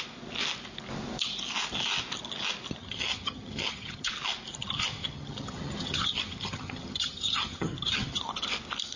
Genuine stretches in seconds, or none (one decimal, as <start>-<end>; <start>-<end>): 0.0-2.8; 4.1-4.6; 8.2-9.0